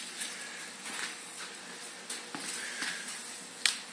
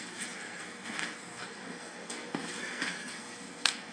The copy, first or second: second